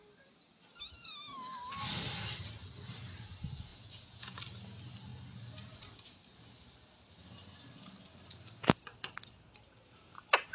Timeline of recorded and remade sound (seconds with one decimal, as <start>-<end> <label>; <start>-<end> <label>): 0.0-3.7 recorded; 3.7-4.4 remade; 4.4-10.5 recorded